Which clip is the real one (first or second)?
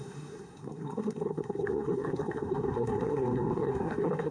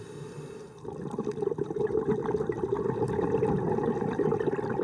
second